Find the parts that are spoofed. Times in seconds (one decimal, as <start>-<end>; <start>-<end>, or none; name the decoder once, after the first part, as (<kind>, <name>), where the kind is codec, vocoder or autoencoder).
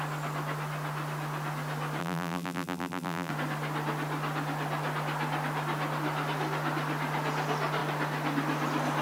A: 2.0-3.3 (vocoder, BigVGAN v2)